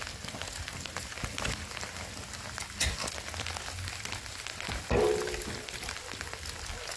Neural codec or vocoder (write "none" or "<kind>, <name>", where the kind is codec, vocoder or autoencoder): none